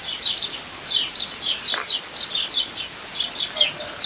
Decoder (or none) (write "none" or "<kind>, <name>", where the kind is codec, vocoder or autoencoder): none